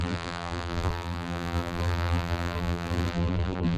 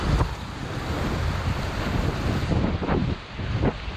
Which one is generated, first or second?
first